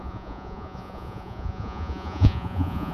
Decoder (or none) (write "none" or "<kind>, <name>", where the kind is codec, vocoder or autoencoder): vocoder, Vocos